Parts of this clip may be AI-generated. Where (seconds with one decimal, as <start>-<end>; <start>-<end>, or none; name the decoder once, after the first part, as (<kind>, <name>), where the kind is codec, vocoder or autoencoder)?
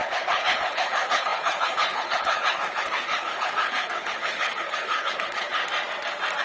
0.0-5.6 (codec, HILCodec)